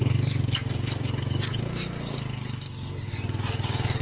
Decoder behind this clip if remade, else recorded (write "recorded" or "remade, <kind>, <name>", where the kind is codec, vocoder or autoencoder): remade, codec, DAC